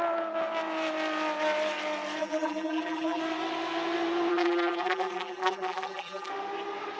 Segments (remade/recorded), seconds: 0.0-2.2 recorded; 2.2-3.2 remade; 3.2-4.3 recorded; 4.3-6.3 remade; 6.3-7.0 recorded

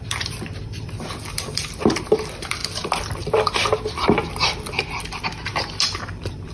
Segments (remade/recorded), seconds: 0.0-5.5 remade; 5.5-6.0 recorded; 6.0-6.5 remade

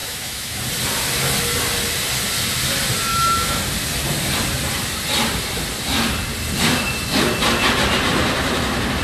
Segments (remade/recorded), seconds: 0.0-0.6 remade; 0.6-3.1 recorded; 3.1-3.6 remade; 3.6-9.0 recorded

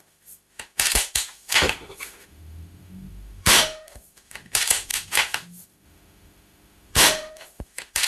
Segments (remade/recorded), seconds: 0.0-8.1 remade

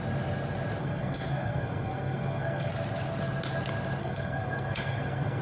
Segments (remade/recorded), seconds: 0.0-0.8 recorded; 0.8-2.7 remade; 2.7-4.0 recorded; 4.0-5.4 remade

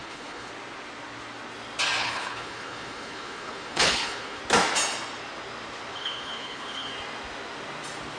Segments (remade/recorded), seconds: 0.0-0.5 remade; 0.5-2.0 recorded; 2.0-4.4 remade; 4.4-5.9 recorded; 5.9-6.9 remade; 6.9-8.2 recorded

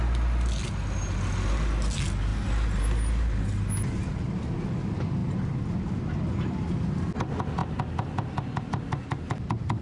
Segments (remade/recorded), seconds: 0.0-9.8 recorded